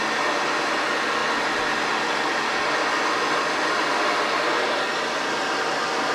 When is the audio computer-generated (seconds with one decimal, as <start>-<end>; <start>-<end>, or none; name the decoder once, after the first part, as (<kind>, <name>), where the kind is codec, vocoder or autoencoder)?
none